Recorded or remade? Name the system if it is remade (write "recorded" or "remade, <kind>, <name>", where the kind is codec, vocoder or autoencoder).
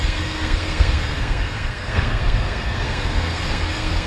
remade, codec, SNAC